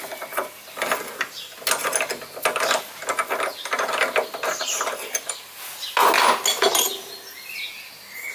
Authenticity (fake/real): real